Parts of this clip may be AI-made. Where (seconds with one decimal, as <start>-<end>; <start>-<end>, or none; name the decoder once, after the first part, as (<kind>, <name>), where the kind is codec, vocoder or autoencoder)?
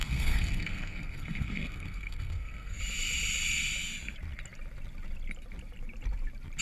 0.0-2.8 (codec, SNAC)